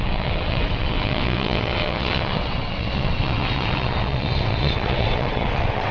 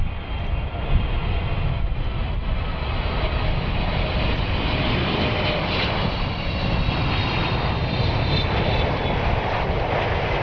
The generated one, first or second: first